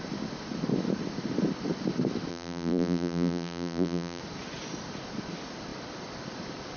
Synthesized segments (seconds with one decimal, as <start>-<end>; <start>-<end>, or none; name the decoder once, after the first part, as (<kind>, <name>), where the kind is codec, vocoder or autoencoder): 2.3-4.2 (vocoder, BigVGAN v2)